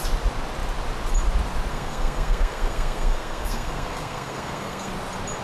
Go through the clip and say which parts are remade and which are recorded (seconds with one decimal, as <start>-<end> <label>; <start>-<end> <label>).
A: 0.0-1.7 recorded; 1.7-4.9 remade; 4.9-5.4 recorded